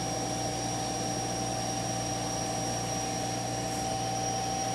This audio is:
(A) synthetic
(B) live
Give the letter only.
B